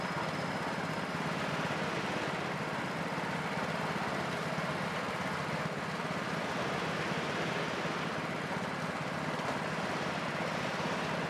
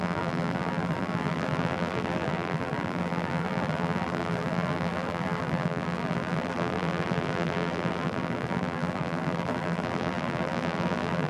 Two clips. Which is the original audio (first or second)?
first